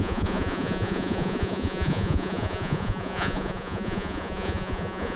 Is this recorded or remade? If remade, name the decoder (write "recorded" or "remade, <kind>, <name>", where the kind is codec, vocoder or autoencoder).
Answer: remade, vocoder, Vocos